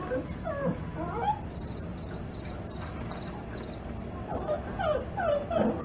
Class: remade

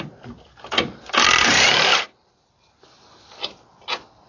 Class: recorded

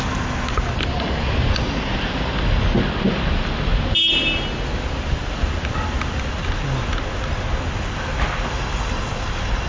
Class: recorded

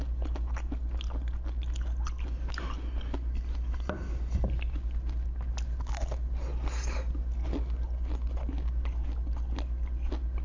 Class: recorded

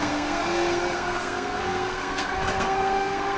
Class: remade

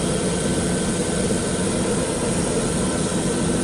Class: recorded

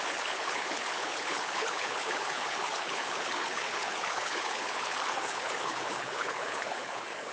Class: remade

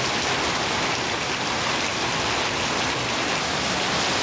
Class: recorded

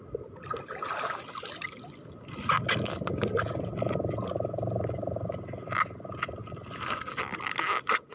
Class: recorded